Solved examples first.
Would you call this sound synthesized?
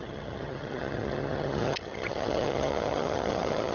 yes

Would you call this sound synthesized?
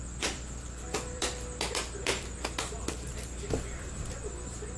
yes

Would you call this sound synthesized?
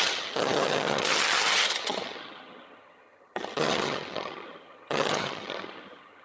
yes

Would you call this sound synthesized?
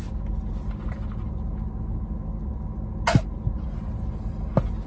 no